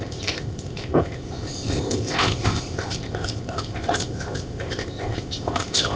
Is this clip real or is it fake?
fake